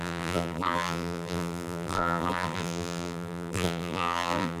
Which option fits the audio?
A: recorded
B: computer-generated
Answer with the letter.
B